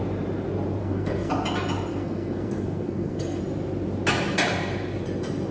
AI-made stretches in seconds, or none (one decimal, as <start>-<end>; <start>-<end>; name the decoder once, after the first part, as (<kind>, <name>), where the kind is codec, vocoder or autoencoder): 0.8-1.3 (codec, SNAC); 1.9-3.4